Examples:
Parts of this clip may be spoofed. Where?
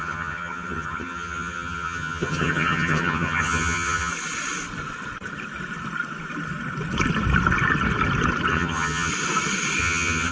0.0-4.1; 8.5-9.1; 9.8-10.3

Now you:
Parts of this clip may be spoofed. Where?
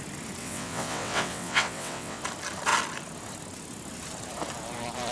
0.4-2.2